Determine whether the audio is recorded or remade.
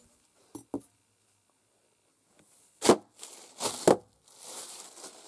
recorded